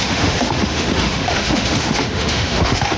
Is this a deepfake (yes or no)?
yes